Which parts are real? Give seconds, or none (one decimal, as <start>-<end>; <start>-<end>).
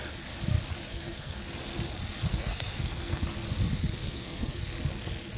0.0-0.9; 1.4-2.3; 3.2-4.0; 4.6-5.4